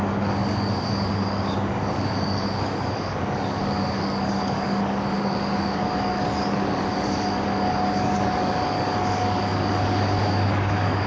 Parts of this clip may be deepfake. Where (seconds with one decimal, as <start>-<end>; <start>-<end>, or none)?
0.0-11.1